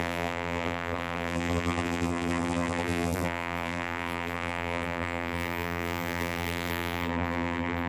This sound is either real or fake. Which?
fake